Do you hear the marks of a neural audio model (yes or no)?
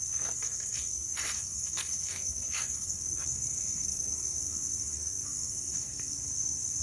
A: yes